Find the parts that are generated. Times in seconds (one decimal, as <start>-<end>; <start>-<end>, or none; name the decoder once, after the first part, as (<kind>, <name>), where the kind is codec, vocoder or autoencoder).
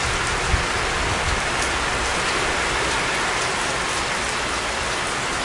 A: none